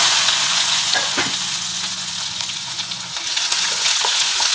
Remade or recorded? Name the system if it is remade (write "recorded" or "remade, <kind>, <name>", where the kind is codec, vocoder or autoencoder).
remade, vocoder, Vocos